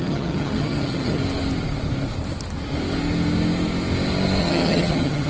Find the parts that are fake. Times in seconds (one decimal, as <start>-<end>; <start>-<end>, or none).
0.0-1.2; 4.4-5.3